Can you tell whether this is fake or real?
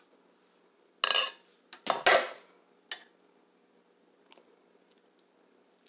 real